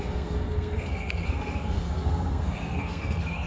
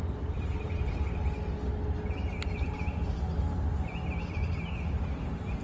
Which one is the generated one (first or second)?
first